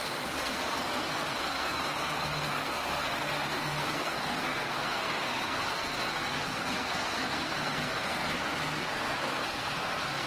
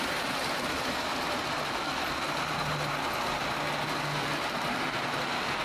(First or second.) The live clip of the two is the second